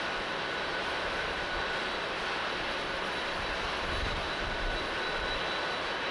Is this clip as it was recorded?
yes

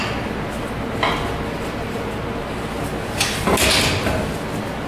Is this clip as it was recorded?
yes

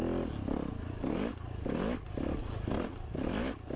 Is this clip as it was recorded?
yes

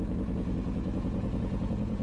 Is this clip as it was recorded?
no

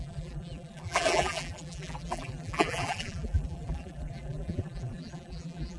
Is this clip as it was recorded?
no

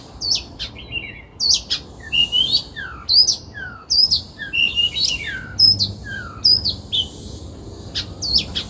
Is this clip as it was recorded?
yes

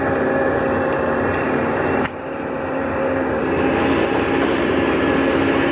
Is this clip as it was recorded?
no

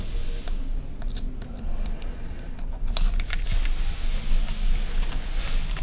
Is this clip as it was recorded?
yes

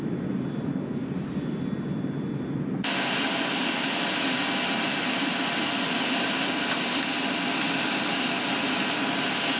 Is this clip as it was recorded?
yes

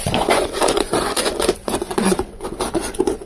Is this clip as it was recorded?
no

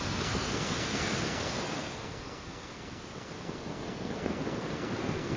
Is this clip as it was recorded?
no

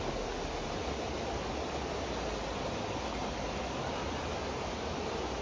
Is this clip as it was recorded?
yes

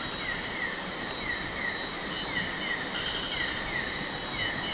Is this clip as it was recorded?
yes